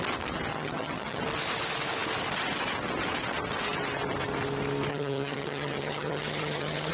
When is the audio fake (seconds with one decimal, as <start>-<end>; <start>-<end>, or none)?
0.5-1.2; 4.9-6.9